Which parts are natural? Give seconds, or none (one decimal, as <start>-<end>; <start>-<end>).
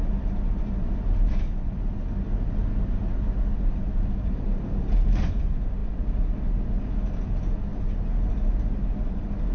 1.7-3.5; 5.3-5.8; 6.8-9.5